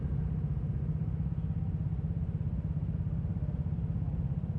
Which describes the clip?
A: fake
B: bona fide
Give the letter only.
B